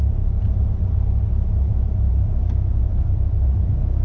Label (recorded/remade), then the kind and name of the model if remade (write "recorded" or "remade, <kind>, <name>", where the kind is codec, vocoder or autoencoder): remade, vocoder, BigVGAN v2